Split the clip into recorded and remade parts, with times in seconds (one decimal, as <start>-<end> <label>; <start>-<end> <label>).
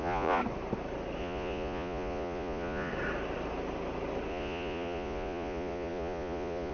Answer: 0.0-0.4 remade; 0.4-1.2 recorded; 1.2-2.9 remade; 2.9-4.3 recorded; 4.3-6.7 remade